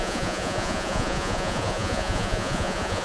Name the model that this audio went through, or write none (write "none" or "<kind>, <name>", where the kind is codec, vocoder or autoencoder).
vocoder, Vocos